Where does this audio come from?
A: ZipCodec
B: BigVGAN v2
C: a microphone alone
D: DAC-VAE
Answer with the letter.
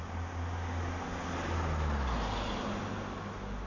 C